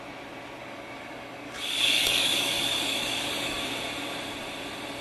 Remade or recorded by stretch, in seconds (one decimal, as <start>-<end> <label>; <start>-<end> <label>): 0.0-0.6 recorded; 0.6-3.6 remade; 3.6-5.0 recorded